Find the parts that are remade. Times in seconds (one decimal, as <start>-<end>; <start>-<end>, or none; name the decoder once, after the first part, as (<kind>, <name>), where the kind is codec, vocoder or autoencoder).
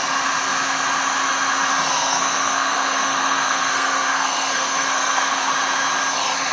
1.9-5.5 (codec, SNAC)